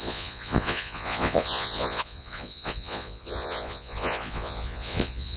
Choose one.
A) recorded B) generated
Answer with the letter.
B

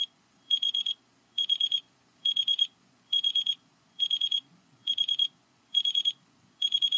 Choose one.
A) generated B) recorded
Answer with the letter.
A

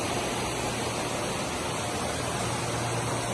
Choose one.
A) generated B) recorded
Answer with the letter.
B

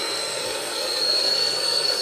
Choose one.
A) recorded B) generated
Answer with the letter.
B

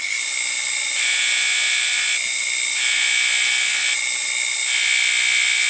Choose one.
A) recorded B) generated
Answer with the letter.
A